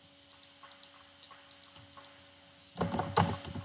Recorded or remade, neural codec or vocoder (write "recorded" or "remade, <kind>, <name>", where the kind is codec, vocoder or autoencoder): recorded